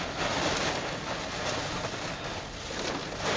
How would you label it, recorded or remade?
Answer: recorded